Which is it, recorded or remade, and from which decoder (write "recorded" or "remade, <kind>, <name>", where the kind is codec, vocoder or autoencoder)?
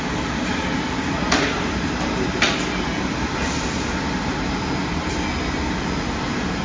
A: recorded